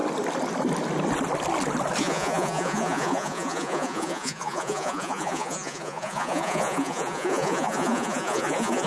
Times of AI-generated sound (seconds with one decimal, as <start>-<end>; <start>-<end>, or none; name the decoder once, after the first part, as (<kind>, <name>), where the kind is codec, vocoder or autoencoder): 2.0-8.9 (vocoder, Vocos)